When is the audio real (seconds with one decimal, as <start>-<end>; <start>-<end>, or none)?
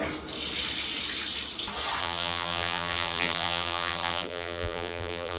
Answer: 0.0-2.0